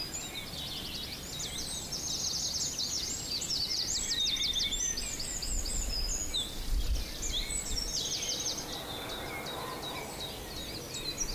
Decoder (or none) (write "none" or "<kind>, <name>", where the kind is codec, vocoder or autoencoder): none